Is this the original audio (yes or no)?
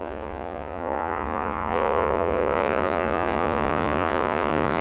no